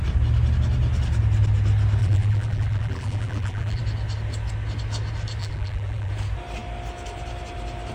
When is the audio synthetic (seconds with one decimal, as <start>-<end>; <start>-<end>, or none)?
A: 2.0-3.8; 5.4-6.1